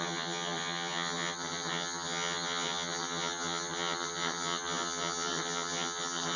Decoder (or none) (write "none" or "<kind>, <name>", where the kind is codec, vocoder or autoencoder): vocoder, HiFi-GAN